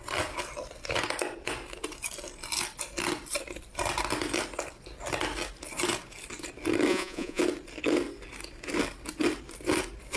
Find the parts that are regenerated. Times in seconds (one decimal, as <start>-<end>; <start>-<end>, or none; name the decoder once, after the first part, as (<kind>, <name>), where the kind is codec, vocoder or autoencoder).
6.9-7.4 (vocoder, Vocos)